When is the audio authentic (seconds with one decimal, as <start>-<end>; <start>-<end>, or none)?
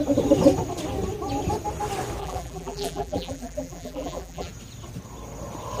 0.0-2.2; 4.5-5.8